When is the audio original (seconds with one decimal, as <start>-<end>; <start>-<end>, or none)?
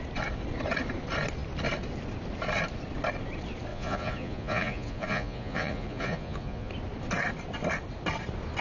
0.0-3.7; 6.7-8.6